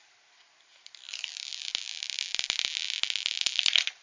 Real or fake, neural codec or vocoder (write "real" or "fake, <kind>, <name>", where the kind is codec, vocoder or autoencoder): real